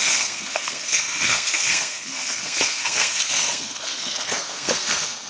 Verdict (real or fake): fake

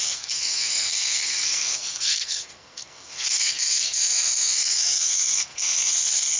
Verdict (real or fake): fake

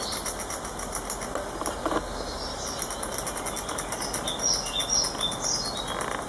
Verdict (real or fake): real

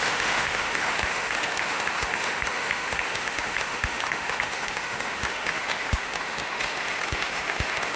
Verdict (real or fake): fake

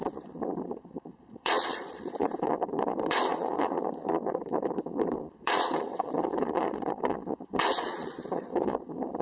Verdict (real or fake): fake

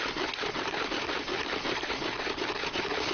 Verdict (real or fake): real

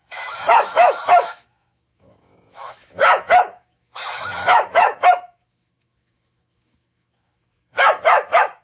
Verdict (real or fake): fake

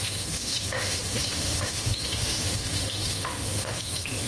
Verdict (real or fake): fake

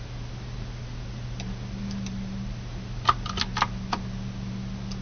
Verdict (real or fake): real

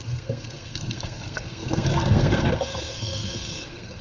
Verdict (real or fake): fake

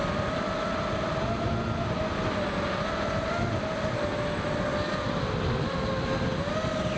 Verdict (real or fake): real